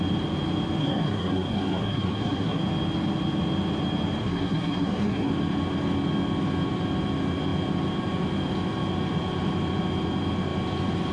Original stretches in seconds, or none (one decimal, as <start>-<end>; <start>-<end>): 0.0-0.8; 2.6-4.2; 5.3-11.1